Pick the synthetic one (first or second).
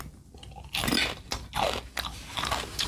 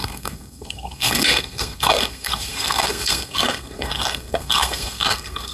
second